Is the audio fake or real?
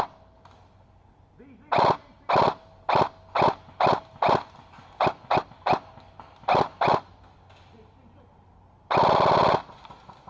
real